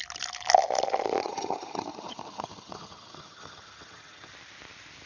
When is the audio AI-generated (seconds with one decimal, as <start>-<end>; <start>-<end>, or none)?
1.2-4.3